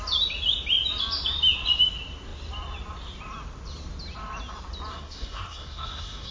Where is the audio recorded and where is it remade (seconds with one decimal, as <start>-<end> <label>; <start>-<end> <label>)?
0.0-4.9 recorded; 4.9-6.3 remade